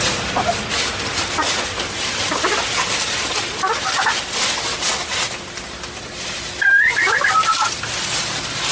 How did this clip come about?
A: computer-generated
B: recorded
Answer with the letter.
B